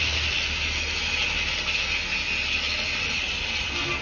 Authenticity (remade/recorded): recorded